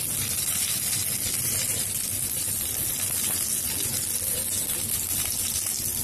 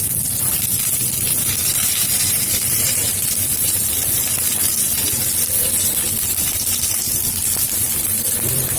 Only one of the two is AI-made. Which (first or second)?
second